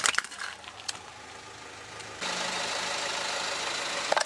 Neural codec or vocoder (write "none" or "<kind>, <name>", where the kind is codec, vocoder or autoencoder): none